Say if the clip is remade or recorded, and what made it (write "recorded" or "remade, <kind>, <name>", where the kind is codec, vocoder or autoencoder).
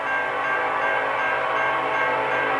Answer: recorded